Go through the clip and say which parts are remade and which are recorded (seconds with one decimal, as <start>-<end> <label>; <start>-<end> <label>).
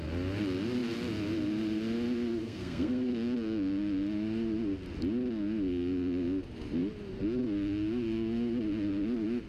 0.0-2.4 recorded; 2.4-3.1 remade; 3.1-9.5 recorded